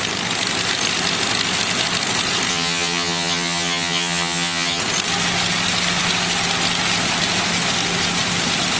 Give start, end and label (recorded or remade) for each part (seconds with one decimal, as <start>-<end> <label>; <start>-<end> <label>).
0.0-2.5 recorded; 2.5-4.8 remade; 4.8-8.8 recorded